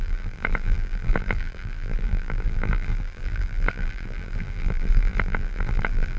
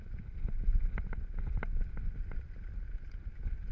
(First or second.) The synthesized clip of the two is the first